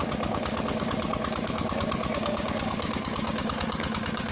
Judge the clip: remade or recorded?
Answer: remade